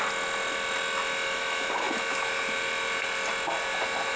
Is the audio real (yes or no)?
yes